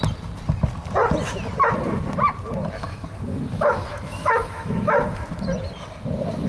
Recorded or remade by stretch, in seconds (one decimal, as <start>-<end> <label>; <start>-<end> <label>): 0.0-2.8 recorded; 2.8-5.2 remade; 5.2-6.5 recorded